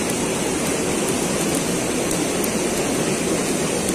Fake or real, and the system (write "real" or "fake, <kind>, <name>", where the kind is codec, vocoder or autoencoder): real